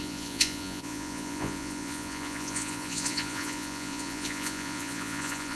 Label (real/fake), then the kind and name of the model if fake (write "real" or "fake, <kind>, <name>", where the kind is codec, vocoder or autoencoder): fake, vocoder, Vocos